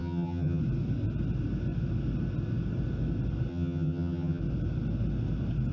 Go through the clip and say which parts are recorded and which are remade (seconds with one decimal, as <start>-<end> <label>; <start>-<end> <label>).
0.0-0.6 remade; 0.6-3.5 recorded; 3.5-4.4 remade; 4.4-5.7 recorded